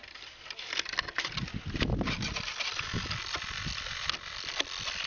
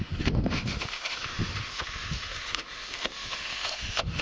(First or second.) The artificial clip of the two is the second